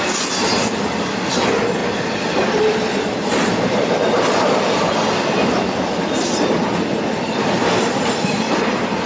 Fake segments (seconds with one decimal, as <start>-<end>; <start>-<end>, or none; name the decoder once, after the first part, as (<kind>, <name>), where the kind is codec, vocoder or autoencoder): none